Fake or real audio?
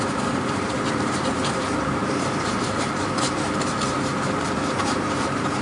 fake